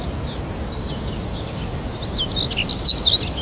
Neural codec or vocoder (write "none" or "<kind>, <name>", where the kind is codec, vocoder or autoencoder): none